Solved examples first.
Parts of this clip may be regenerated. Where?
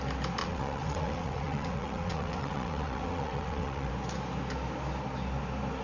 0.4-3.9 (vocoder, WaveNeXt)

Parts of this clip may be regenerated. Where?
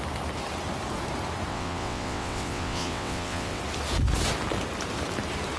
1.5-3.6 (vocoder, WaveNeXt)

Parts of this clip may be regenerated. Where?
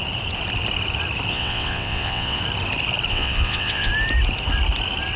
1.3-2.4 (vocoder, WaveNeXt); 3.1-3.9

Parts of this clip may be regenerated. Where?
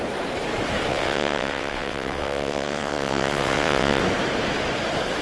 0.9-4.0 (vocoder, WaveNeXt)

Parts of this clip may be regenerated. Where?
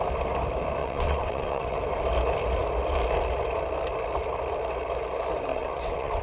0.8-1.8 (vocoder, WaveNeXt); 5.5-6.2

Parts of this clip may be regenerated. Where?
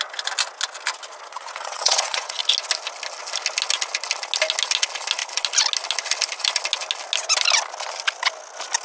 1.3-2.4 (vocoder, WaveNeXt)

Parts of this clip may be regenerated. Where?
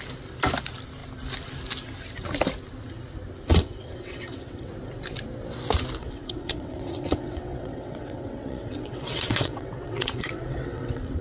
3.5-4.7 (vocoder, WaveNeXt); 6.0-11.2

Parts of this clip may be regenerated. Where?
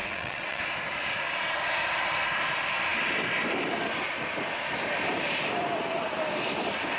0.0-0.6 (vocoder, WaveNeXt)